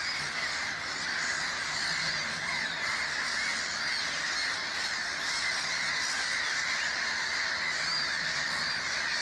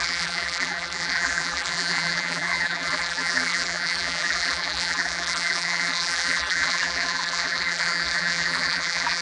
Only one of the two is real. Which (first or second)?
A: first